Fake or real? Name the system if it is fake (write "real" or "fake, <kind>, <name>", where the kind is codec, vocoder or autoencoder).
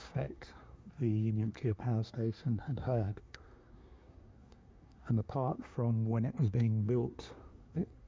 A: fake, codec, SNAC